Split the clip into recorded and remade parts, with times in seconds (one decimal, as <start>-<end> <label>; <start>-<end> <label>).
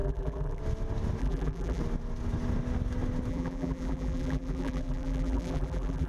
0.0-0.6 remade; 0.6-1.2 recorded; 1.2-1.8 remade; 1.8-3.3 recorded; 3.3-6.1 remade